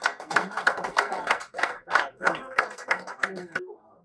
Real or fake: fake